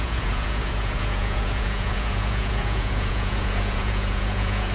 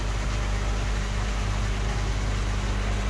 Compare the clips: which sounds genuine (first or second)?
second